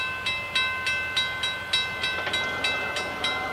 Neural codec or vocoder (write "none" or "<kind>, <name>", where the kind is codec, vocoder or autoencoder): none